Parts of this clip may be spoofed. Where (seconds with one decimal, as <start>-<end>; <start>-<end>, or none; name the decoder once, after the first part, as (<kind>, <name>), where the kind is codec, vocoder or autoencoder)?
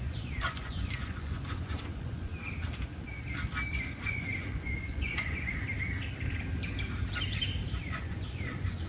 0.0-2.3 (vocoder, Vocos); 3.7-5.5; 7.8-8.9